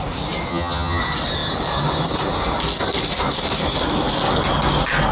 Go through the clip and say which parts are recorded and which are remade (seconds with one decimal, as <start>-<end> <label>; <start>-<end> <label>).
0.0-0.5 recorded; 0.5-1.0 remade; 1.0-5.1 recorded